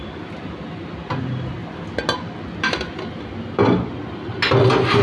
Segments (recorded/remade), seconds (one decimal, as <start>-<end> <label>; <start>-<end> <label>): 0.0-5.0 recorded